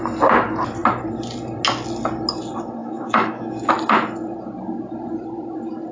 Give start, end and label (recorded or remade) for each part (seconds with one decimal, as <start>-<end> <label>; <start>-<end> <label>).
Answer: 0.0-2.8 recorded; 2.8-3.7 remade; 3.7-5.9 recorded